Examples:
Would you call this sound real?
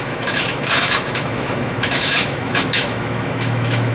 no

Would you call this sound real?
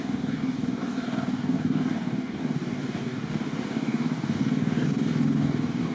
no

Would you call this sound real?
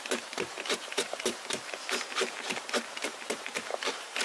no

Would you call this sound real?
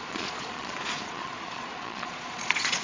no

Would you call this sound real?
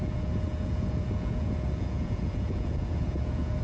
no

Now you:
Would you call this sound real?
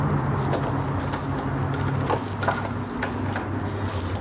yes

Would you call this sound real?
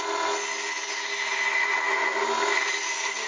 yes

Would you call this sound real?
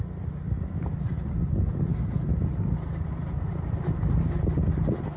yes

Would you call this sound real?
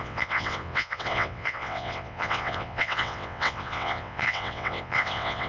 no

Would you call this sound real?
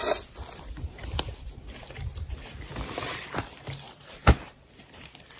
no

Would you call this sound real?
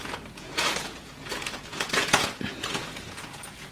no